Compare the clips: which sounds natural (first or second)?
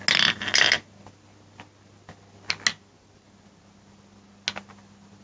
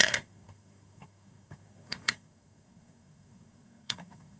first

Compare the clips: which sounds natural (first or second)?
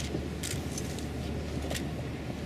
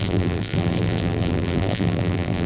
first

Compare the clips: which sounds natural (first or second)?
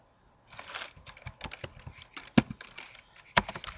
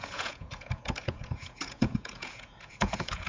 first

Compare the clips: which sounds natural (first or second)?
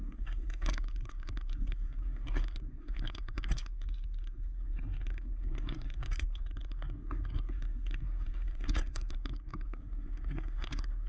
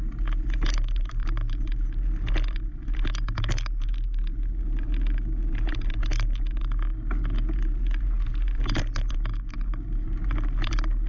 second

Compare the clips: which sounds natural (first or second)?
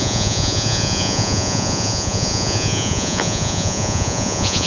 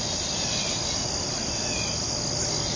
second